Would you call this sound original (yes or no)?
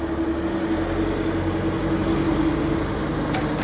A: yes